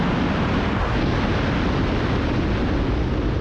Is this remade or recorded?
recorded